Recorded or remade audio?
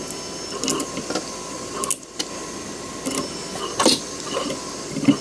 recorded